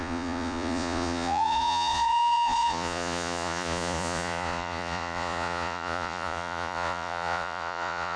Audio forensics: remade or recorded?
remade